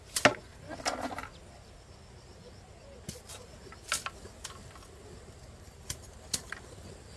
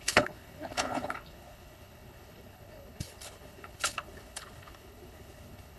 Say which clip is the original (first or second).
first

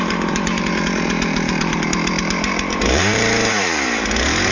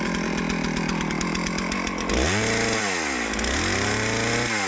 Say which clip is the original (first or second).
second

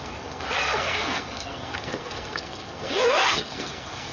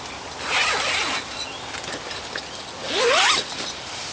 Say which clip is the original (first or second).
second